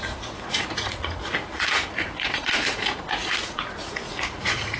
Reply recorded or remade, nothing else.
remade